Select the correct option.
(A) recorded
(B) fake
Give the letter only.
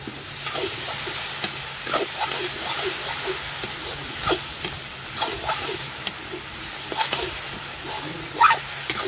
A